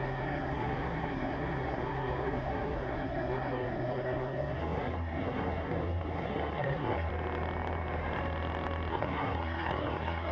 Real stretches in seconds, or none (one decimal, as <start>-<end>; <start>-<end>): 7.1-8.9